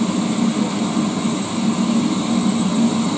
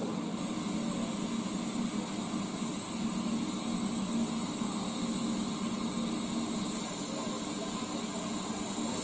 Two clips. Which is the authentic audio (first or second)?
second